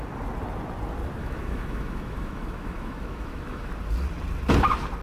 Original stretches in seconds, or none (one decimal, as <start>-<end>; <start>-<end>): 0.0-1.2; 3.7-5.0